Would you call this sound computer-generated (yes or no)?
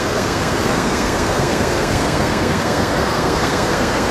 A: yes